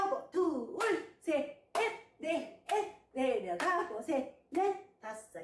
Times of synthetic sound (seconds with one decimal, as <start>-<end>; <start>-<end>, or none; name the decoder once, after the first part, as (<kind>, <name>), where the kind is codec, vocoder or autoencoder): none